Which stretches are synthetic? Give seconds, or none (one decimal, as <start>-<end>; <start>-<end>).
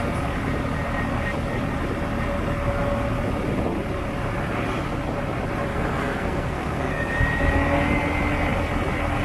5.7-6.9